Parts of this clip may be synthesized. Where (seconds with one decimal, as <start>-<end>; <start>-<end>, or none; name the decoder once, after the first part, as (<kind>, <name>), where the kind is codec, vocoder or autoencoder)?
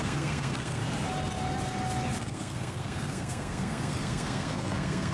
0.0-0.8 (codec, SNAC); 2.2-5.1